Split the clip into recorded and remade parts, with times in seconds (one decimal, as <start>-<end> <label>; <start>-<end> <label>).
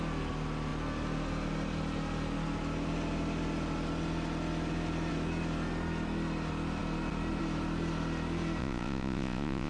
0.0-8.6 recorded; 8.6-9.7 remade